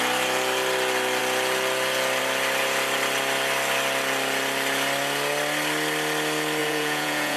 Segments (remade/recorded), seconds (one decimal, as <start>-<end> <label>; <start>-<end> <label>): 0.0-6.6 recorded; 6.6-7.4 remade